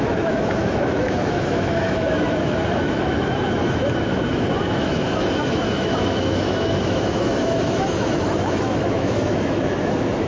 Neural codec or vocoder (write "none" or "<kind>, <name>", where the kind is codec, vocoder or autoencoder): autoencoder, DAC-VAE